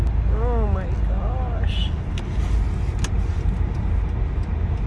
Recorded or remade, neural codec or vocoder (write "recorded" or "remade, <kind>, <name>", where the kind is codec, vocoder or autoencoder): recorded